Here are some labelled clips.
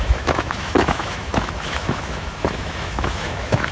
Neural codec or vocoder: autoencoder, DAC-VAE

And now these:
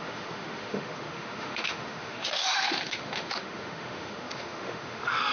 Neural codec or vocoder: autoencoder, DAC-VAE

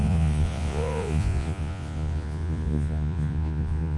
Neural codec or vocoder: vocoder, Vocos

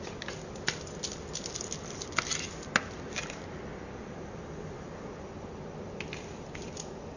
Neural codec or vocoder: none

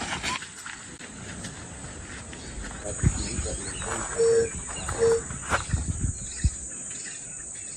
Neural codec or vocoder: none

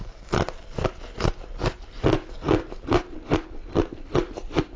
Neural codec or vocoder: none